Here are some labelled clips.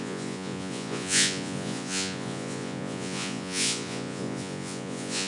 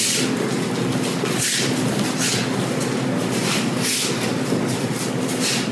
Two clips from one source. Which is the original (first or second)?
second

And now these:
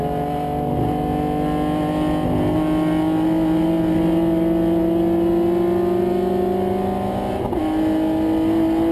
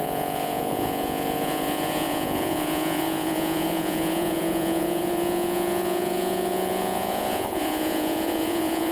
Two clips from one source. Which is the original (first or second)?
first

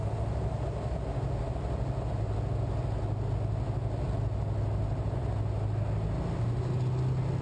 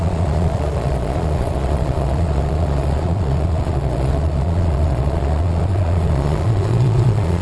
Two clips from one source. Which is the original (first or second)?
first